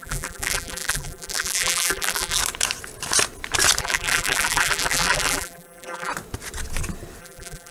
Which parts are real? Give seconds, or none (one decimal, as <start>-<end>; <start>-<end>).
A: 2.4-3.8; 6.1-7.2